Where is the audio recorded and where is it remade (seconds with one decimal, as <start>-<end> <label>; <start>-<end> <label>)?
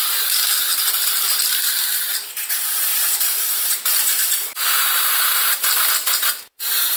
0.0-2.9 recorded; 2.9-5.8 remade; 5.8-7.0 recorded